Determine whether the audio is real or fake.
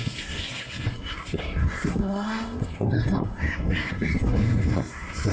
fake